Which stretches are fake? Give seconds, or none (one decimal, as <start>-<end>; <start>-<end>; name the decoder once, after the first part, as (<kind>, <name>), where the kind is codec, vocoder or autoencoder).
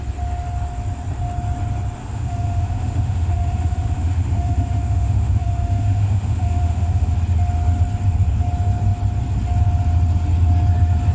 2.0-7.1 (autoencoder, DAC-VAE)